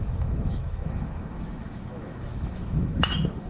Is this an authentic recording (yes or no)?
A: no